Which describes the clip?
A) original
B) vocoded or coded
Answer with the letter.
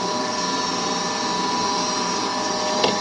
A